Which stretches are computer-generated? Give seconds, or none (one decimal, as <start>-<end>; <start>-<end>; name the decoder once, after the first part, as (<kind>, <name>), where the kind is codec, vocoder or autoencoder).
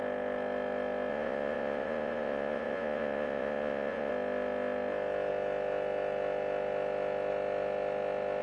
1.1-4.1 (vocoder, Vocos)